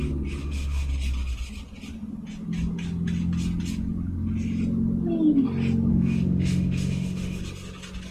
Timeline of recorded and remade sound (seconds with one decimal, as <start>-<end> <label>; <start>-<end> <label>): 0.0-0.4 recorded; 0.4-0.9 remade; 0.9-5.9 recorded; 5.9-7.4 remade; 7.4-8.1 recorded